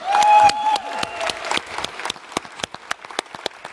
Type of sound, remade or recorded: recorded